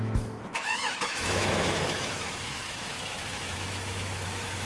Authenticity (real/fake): fake